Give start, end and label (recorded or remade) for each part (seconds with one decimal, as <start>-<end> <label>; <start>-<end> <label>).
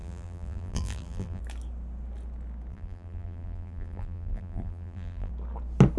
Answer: 0.0-1.4 remade; 1.4-2.7 recorded; 2.7-5.3 remade; 5.3-6.0 recorded